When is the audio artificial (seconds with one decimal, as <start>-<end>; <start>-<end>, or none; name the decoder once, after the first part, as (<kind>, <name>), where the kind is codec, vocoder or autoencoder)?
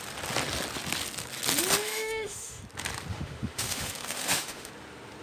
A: 1.8-2.6 (autoencoder, DAC-VAE); 3.1-4.7